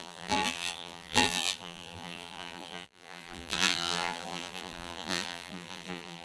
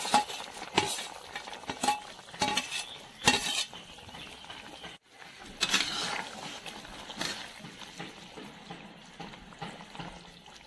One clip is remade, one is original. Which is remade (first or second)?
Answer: first